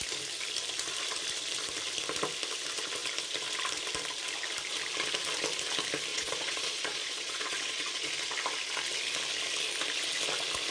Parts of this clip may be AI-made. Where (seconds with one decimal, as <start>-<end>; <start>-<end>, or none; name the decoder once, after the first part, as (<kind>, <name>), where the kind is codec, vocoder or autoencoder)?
6.1-8.1 (vocoder, Vocos)